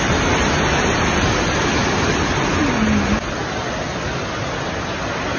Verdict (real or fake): real